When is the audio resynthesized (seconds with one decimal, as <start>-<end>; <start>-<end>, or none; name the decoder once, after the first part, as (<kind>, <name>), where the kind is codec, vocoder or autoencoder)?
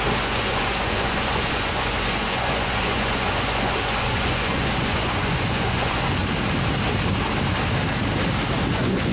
0.0-6.2 (vocoder, Vocos); 8.7-9.1